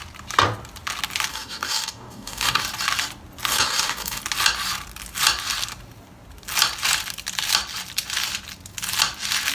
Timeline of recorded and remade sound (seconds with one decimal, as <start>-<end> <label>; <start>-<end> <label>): 0.0-1.3 recorded; 1.3-2.6 remade; 2.6-3.5 recorded; 3.5-4.2 remade; 4.2-9.5 recorded